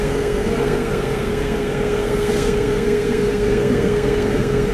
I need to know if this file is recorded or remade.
remade